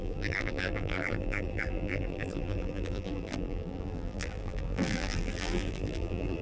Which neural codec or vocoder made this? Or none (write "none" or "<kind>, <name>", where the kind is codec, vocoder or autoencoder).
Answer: vocoder, BigVGAN v2